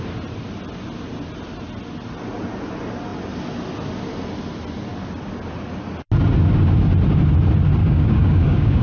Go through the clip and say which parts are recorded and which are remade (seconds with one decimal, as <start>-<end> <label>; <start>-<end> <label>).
0.0-7.8 recorded; 7.8-8.8 remade